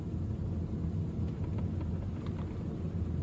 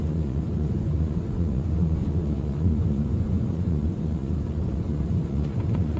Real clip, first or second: first